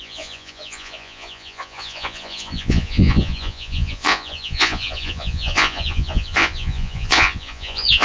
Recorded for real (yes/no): no